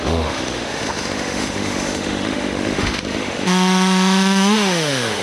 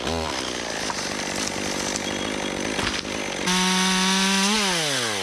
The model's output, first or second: first